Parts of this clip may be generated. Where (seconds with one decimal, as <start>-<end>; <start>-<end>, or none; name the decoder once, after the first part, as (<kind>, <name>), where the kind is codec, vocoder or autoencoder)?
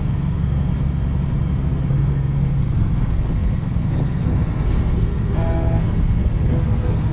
0.0-0.7 (codec, SNAC); 1.9-7.1